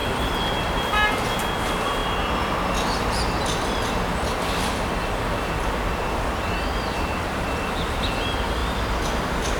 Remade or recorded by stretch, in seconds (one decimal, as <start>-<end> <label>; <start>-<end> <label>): 0.0-2.0 remade; 2.0-5.9 recorded; 5.9-8.6 remade; 8.6-9.2 recorded; 9.2-9.6 remade

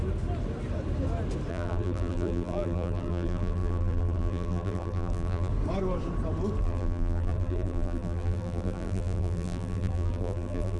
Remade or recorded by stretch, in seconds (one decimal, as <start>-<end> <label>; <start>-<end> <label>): 0.0-1.5 recorded; 1.5-5.5 remade; 5.5-6.6 recorded; 6.6-10.8 remade